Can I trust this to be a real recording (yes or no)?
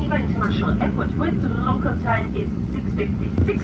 no